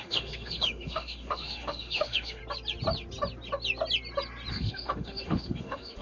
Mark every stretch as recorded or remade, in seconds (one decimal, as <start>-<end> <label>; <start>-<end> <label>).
0.0-2.4 remade; 2.4-4.5 recorded; 4.5-6.0 remade